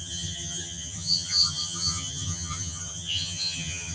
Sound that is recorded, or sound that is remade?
remade